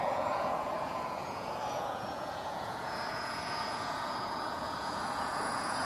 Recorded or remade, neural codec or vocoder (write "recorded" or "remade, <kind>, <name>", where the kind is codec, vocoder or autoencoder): remade, vocoder, Vocos